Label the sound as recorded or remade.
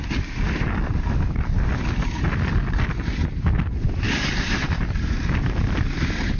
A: recorded